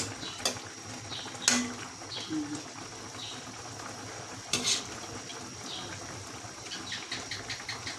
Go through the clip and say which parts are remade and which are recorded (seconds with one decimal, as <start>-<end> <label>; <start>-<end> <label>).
0.0-8.0 recorded